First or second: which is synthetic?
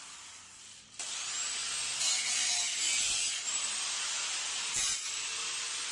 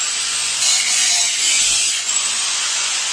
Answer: second